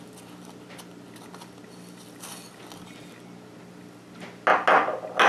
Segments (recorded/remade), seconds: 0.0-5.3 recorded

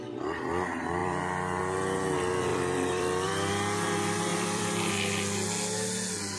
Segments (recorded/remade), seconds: 0.0-1.0 recorded; 1.0-1.6 remade; 1.6-2.5 recorded; 2.5-3.5 remade; 3.5-4.3 recorded; 4.3-4.9 remade; 4.9-6.4 recorded

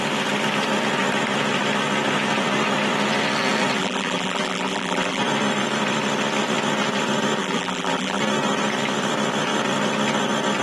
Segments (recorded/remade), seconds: 0.0-3.8 recorded; 3.8-5.2 remade; 5.2-7.4 recorded; 7.4-8.2 remade; 8.2-10.6 recorded

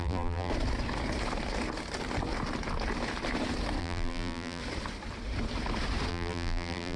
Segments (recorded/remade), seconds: 0.0-0.5 remade; 0.5-3.8 recorded; 3.8-4.6 remade; 4.6-6.1 recorded; 6.1-7.0 remade